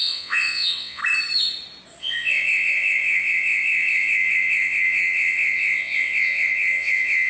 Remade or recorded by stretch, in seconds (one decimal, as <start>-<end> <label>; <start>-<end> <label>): 0.0-1.0 remade; 1.0-2.0 recorded; 2.0-7.3 remade

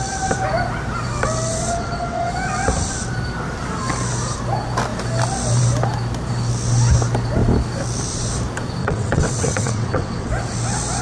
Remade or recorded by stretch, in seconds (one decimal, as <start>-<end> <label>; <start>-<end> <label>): 0.0-1.5 recorded; 1.5-2.3 remade; 2.3-8.8 recorded; 8.8-10.3 remade; 10.3-11.0 recorded

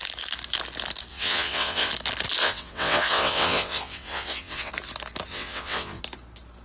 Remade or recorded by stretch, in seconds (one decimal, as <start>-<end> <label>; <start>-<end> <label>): 0.0-1.1 recorded; 1.1-1.9 remade; 1.9-2.4 recorded; 2.4-4.7 remade; 4.7-5.3 recorded; 5.3-6.0 remade; 6.0-6.6 recorded